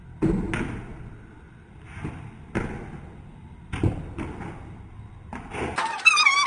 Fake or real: real